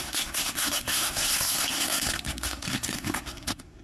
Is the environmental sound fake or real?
fake